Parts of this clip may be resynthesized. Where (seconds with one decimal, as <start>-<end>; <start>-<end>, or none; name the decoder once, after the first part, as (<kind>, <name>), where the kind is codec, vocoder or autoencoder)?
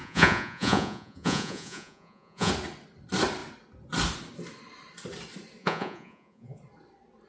0.0-2.5 (vocoder, Vocos); 5.6-6.6